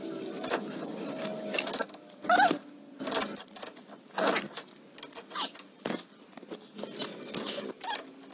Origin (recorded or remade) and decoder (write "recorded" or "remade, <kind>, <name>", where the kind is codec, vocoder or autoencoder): recorded